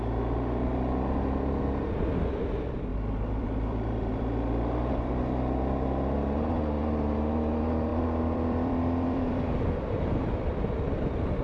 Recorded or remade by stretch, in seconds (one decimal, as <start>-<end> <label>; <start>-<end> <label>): 0.0-2.9 recorded; 2.9-5.1 remade; 5.1-7.9 recorded; 7.9-10.3 remade; 10.3-11.4 recorded